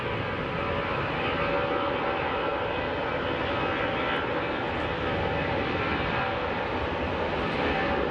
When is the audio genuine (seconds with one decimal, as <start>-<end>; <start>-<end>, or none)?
0.0-8.1